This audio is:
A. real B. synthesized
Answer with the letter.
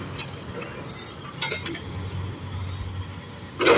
A